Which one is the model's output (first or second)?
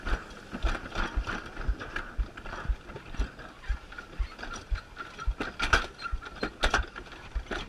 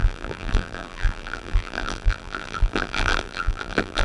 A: second